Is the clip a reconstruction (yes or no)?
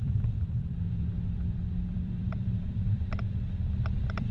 yes